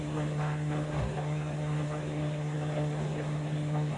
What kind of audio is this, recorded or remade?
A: remade